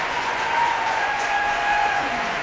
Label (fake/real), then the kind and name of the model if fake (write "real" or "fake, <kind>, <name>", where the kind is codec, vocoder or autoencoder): fake, vocoder, Vocos